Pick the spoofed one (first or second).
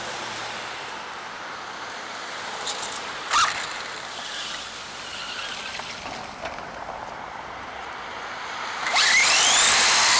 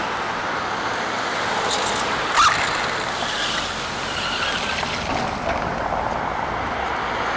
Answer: first